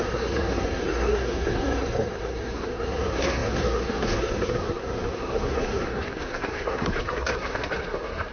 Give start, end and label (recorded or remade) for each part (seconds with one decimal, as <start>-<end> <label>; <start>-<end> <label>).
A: 0.0-8.3 remade